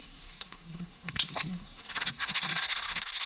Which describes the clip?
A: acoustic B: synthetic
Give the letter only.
B